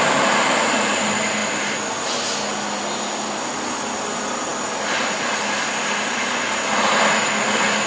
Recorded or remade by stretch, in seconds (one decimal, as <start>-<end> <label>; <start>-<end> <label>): 0.0-7.9 recorded

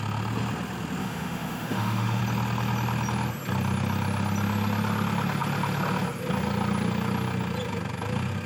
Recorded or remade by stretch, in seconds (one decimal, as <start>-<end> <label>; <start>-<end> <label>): 0.0-1.0 recorded; 1.0-2.2 remade; 2.2-8.5 recorded

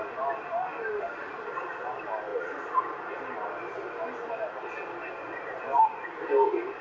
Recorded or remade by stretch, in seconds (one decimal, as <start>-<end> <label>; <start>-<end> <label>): 0.0-0.5 recorded; 0.5-1.3 remade; 1.3-6.8 recorded

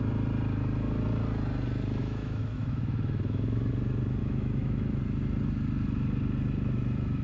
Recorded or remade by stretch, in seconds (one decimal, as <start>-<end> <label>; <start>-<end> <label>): 0.0-2.0 recorded; 2.0-3.7 remade; 3.7-4.2 recorded; 4.2-5.0 remade; 5.0-7.2 recorded